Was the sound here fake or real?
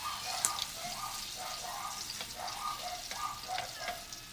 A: real